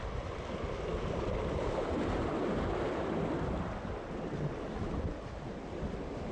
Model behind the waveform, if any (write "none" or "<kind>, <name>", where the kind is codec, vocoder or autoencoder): none